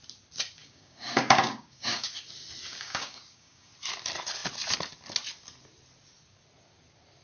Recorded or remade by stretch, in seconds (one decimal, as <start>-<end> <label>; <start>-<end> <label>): 0.0-0.6 recorded; 0.6-2.1 remade; 2.1-2.7 recorded; 2.7-3.7 remade; 3.7-7.2 recorded